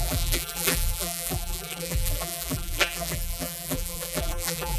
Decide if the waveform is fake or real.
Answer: fake